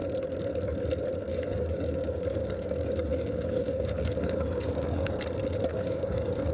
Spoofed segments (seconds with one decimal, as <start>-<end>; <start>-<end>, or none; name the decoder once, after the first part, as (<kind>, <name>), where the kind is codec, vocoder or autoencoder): 1.3-5.1 (codec, DAC); 5.7-6.5